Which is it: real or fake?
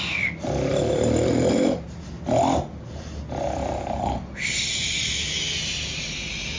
real